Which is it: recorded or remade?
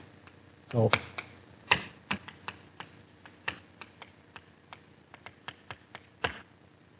recorded